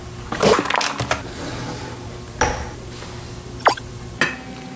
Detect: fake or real real